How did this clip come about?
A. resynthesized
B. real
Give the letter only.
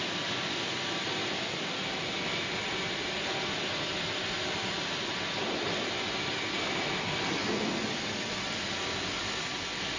B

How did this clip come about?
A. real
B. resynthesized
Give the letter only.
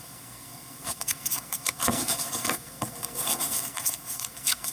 B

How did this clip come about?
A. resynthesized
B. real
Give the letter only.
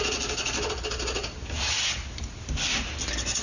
B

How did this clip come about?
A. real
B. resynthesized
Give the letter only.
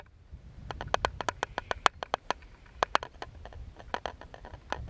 A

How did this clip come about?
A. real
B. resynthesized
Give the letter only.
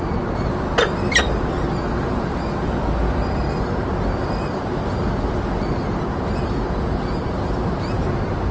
A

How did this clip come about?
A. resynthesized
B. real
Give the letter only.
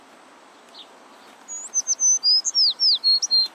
B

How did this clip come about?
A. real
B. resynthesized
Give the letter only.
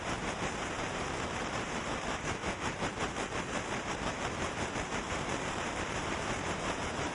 B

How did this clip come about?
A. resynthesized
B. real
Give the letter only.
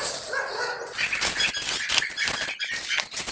B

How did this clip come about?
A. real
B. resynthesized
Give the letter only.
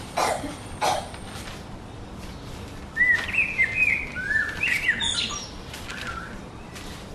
A